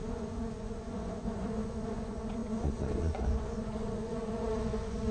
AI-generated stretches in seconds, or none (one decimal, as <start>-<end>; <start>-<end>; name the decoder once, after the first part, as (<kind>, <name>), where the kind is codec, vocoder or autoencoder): 0.0-5.1 (vocoder, Vocos)

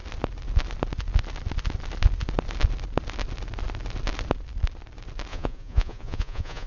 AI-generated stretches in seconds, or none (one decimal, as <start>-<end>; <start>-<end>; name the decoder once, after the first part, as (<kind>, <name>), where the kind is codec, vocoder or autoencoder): 5.3-6.7 (vocoder, Vocos)

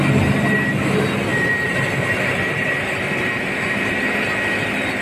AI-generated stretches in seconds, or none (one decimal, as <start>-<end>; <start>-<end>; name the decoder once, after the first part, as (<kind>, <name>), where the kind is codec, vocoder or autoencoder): 1.3-4.3 (vocoder, BigVGAN v2)

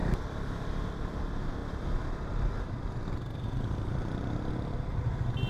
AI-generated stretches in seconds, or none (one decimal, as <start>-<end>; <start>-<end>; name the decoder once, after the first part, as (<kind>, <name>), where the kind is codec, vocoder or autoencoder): 0.0-1.1 (vocoder, BigVGAN v2); 1.6-4.5

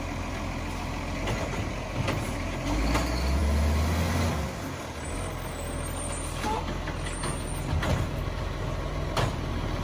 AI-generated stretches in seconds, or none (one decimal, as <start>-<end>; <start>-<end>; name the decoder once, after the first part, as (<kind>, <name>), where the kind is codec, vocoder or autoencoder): none